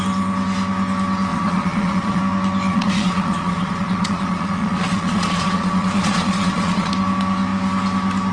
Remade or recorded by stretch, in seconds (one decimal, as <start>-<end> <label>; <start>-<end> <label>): 0.0-1.3 recorded; 1.3-2.2 remade; 2.2-2.7 recorded; 2.7-6.9 remade; 6.9-8.3 recorded